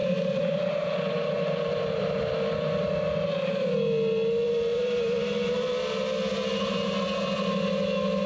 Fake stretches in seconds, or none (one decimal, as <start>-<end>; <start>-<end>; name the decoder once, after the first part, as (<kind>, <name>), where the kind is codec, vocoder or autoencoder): 0.0-2.2 (vocoder, BigVGAN v2); 4.7-5.7; 6.3-6.9